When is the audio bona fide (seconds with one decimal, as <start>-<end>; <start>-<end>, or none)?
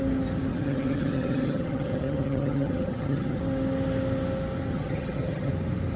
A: 0.0-0.5; 3.4-4.7; 5.5-6.0